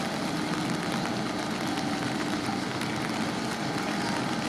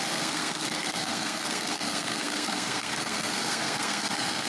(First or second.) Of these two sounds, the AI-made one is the second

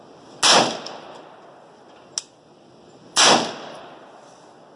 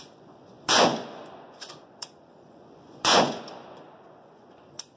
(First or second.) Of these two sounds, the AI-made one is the second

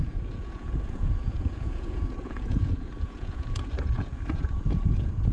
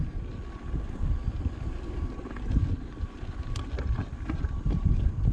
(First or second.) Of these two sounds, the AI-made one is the first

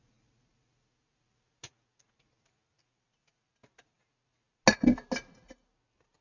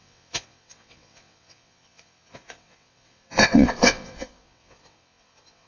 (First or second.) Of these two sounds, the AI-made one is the second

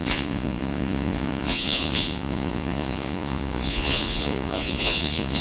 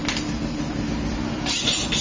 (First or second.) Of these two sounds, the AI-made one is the first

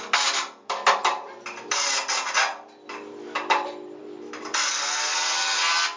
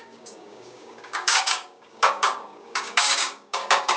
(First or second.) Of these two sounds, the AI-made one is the second